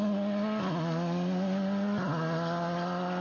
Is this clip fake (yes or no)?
no